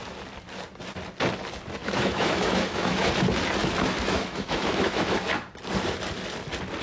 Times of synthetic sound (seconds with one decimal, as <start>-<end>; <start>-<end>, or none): 1.8-3.1; 3.6-5.0